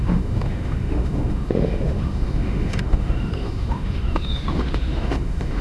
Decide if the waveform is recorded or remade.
remade